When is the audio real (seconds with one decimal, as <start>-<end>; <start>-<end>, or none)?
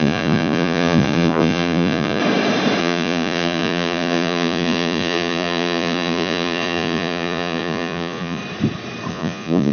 2.2-2.8; 8.4-9.1